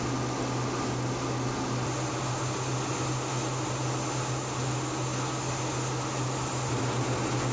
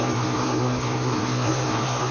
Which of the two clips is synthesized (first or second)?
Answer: second